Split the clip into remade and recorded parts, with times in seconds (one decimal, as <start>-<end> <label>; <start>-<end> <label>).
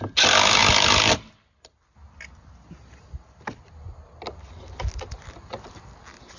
0.0-6.4 recorded